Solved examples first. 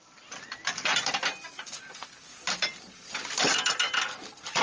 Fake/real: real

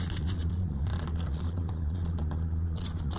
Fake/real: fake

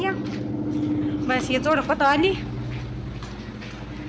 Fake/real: real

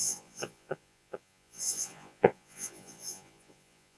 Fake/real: fake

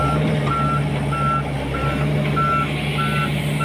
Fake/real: real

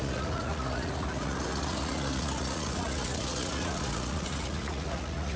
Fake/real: fake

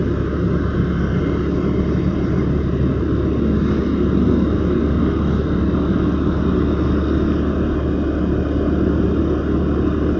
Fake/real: real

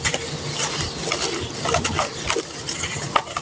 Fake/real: real